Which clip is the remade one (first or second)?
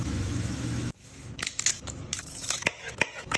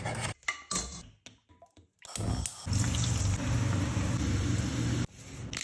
first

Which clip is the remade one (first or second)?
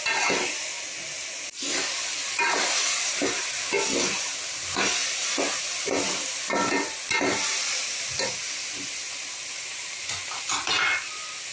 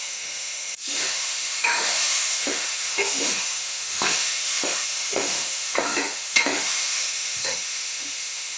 second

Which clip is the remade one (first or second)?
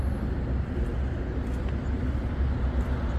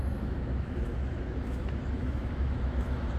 second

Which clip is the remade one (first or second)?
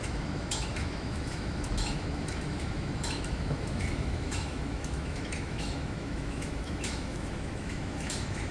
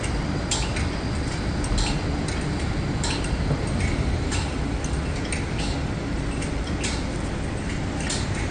first